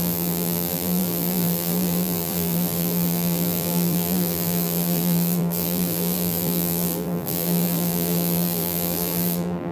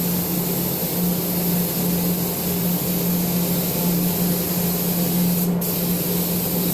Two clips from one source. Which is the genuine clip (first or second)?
second